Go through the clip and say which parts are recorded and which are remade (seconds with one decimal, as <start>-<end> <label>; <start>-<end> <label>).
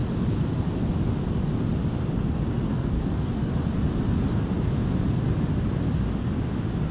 0.0-2.7 recorded; 2.7-3.5 remade; 3.5-6.9 recorded